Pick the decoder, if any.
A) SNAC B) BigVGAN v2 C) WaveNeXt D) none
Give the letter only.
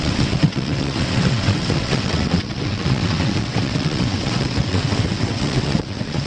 C